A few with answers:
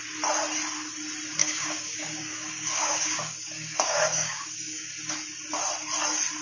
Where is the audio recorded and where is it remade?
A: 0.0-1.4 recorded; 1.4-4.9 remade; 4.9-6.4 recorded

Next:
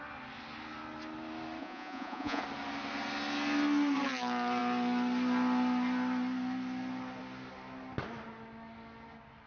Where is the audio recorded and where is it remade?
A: 0.0-1.6 recorded; 1.6-2.4 remade; 2.4-9.5 recorded